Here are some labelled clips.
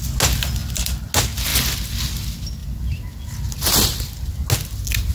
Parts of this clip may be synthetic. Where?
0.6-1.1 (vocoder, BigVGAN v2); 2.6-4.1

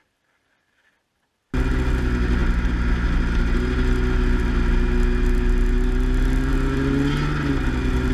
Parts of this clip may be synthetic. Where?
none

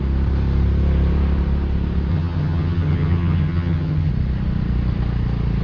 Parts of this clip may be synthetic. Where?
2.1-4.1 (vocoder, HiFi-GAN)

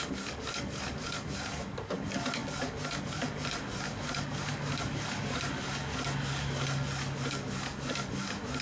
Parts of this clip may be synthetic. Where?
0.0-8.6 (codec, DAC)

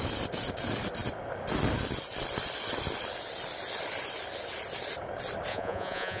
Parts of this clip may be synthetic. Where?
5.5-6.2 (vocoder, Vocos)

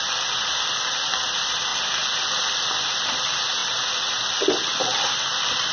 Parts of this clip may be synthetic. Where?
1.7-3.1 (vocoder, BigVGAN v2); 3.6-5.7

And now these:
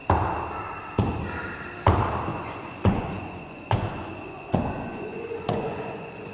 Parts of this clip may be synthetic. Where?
2.3-6.3 (vocoder, Vocos)